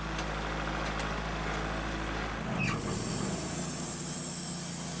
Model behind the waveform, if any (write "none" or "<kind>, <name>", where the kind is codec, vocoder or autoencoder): none